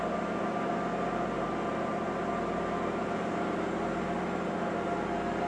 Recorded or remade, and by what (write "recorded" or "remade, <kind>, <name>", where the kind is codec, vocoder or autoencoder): recorded